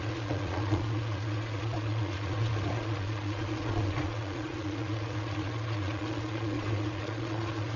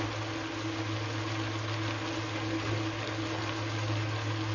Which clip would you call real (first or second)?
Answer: second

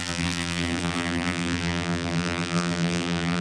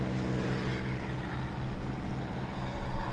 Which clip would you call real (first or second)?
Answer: second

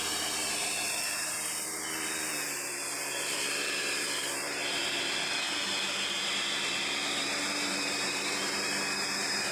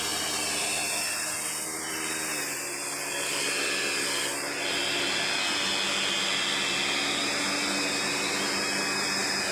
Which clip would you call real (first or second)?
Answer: second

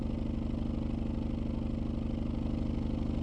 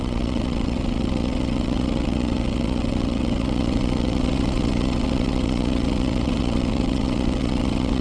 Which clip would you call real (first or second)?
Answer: first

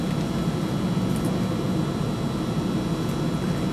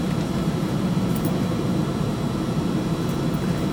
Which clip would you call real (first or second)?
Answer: first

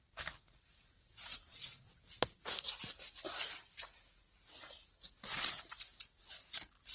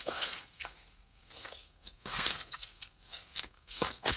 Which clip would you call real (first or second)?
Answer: first